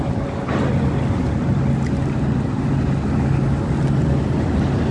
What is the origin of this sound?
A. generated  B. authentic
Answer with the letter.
B